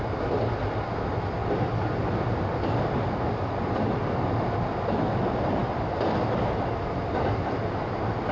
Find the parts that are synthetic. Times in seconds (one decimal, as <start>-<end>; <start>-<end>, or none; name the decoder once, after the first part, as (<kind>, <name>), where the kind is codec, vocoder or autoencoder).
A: none